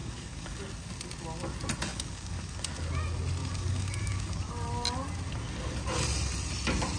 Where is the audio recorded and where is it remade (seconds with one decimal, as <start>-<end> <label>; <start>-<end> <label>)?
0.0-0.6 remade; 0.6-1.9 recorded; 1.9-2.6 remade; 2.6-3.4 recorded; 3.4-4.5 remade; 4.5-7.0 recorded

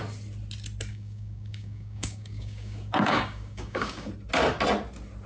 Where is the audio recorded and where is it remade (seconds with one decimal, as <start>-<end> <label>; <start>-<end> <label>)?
0.0-0.9 recorded; 0.9-4.1 remade; 4.1-5.3 recorded

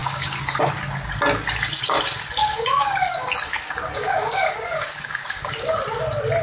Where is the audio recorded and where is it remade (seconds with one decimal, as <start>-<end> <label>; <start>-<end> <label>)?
0.0-0.7 remade; 0.7-2.4 recorded; 2.4-5.5 remade; 5.5-6.4 recorded

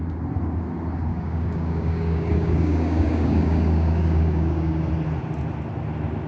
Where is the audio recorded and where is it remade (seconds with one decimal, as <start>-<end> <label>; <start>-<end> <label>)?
0.0-1.1 recorded; 1.1-4.9 remade; 4.9-6.3 recorded